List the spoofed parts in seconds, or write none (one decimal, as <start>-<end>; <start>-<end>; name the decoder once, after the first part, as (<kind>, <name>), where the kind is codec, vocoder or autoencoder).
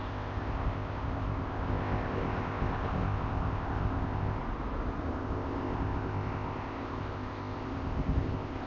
0.0-4.4 (codec, ZipCodec); 5.0-8.7